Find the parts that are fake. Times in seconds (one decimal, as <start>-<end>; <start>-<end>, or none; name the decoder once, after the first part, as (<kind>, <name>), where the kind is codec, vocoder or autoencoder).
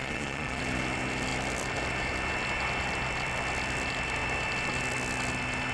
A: 0.0-0.6 (vocoder, Vocos)